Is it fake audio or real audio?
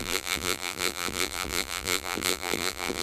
fake